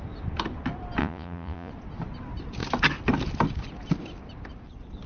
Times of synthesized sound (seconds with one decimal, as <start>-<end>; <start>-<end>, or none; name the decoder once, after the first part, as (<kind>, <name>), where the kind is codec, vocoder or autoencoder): 1.0-1.7 (vocoder, Vocos)